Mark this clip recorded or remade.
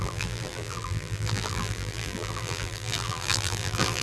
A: remade